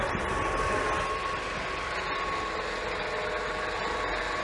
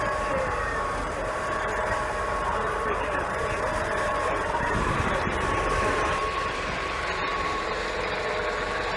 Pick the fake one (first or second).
second